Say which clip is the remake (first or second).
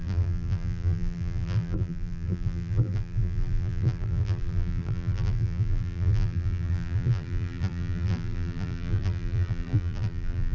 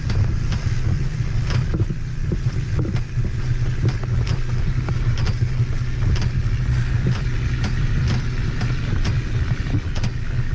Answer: first